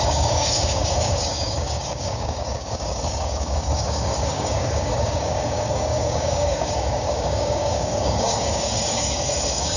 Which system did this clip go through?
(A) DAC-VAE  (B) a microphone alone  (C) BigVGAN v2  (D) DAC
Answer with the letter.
D